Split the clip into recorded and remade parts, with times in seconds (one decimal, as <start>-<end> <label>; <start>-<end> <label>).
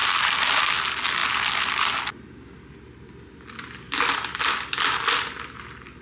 0.0-6.0 recorded